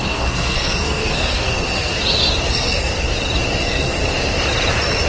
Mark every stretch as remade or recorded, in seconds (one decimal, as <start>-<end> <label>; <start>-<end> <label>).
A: 0.0-1.9 remade; 1.9-2.5 recorded; 2.5-2.9 remade; 2.9-3.6 recorded; 3.6-4.0 remade; 4.0-5.1 recorded